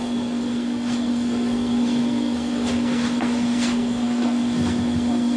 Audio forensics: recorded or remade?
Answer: remade